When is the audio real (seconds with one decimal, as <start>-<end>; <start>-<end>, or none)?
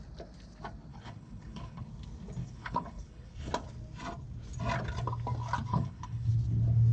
0.0-0.9; 1.9-2.4; 3.5-5.7; 6.3-6.9